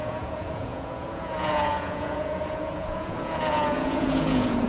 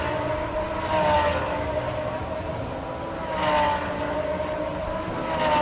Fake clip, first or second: first